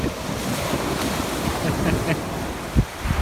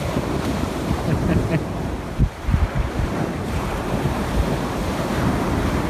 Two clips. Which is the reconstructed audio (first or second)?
second